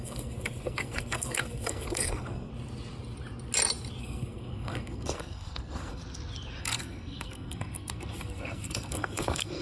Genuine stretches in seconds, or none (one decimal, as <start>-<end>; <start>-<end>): 2.5-4.0; 6.0-6.6